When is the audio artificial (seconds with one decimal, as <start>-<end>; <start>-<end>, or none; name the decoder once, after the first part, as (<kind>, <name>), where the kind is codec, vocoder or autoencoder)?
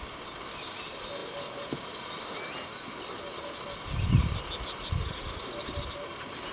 none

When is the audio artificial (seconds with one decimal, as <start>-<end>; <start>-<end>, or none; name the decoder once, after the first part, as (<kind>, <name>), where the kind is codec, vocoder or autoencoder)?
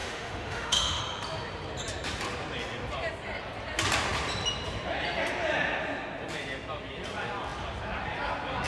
0.0-1.0 (autoencoder, DAC-VAE)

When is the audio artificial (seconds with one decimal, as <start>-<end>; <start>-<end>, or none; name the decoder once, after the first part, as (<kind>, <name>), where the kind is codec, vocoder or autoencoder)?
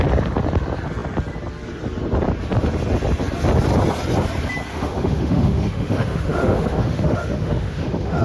4.7-8.2 (autoencoder, DAC-VAE)